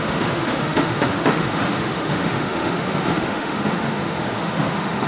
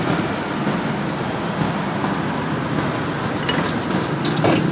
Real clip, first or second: second